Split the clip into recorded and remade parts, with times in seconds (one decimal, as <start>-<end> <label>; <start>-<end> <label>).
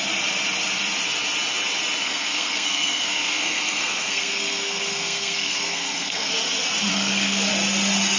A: 0.0-2.0 recorded; 2.0-6.3 remade; 6.3-6.9 recorded; 6.9-7.5 remade; 7.5-8.2 recorded